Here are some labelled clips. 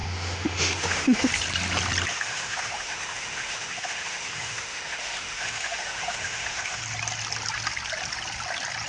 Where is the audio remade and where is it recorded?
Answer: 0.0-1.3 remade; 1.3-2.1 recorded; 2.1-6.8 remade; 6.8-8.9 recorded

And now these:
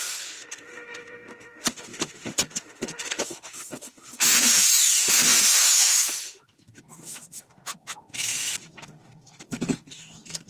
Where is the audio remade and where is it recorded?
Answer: 0.0-10.5 remade

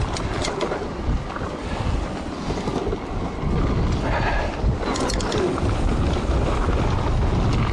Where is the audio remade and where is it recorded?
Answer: 0.0-7.7 recorded